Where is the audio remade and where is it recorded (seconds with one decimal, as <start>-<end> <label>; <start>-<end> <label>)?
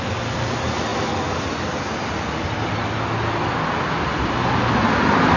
0.0-5.4 recorded